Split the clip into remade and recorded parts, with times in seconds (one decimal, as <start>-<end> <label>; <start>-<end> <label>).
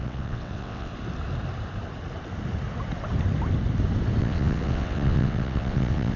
0.0-0.9 remade; 0.9-4.2 recorded; 4.2-6.2 remade